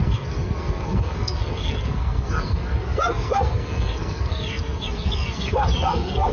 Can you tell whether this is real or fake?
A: fake